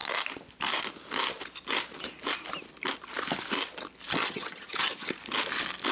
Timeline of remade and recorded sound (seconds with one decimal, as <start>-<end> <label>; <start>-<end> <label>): 0.0-4.2 recorded; 4.2-5.1 remade; 5.1-5.9 recorded